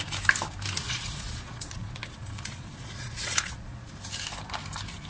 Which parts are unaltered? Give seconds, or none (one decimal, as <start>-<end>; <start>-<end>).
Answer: 0.0-0.8; 3.9-5.1

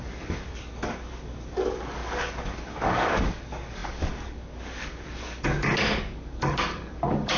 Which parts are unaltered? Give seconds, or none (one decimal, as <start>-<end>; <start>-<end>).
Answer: none

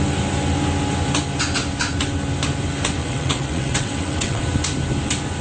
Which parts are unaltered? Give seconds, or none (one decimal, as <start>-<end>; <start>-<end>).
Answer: 0.0-3.0; 4.4-5.4

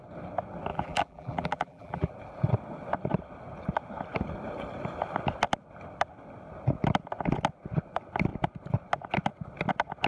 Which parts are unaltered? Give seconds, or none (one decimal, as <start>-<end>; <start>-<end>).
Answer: 0.0-0.7; 2.1-10.1

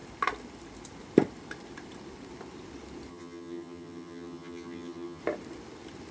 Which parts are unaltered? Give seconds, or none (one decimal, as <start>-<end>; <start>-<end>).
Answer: 0.0-3.1; 5.2-6.1

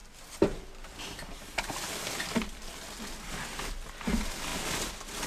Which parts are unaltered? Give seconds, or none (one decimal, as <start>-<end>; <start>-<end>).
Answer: 0.0-5.3

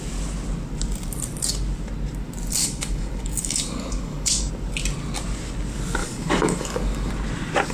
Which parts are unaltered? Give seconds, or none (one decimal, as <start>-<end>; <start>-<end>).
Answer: 0.0-2.6; 4.5-6.0; 7.1-7.7